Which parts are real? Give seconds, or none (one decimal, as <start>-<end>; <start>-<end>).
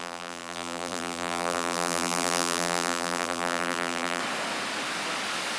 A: 4.2-5.6